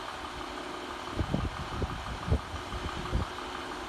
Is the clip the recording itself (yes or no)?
yes